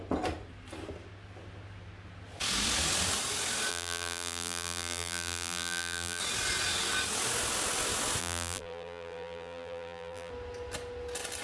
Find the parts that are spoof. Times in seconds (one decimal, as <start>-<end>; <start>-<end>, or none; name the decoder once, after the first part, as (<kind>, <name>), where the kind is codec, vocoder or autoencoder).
3.7-6.2 (vocoder, BigVGAN v2); 8.2-10.3